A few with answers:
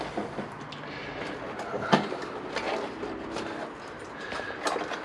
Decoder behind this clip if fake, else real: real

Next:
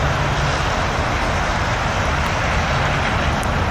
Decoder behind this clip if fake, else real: real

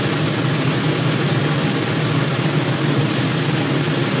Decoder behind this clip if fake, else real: real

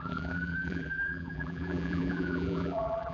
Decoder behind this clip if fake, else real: fake, vocoder, BigVGAN v2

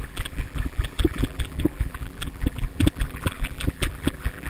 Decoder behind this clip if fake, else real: fake, vocoder, BigVGAN v2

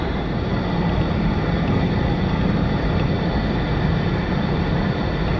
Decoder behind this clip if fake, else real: fake, vocoder, BigVGAN v2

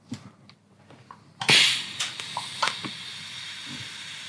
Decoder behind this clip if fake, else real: real